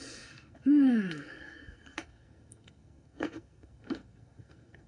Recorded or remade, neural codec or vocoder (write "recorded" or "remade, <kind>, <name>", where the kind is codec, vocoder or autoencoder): remade, codec, SNAC